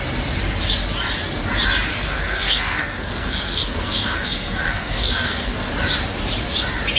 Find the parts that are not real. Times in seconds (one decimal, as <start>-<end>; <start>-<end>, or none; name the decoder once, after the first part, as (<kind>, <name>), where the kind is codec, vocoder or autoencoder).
1.9-5.7 (codec, SNAC)